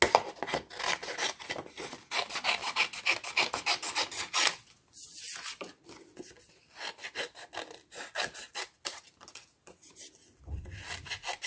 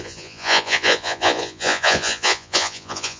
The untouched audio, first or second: first